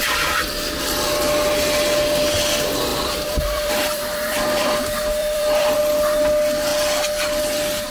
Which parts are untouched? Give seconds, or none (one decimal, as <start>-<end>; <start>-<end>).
0.0-2.9; 4.8-5.2; 5.8-7.9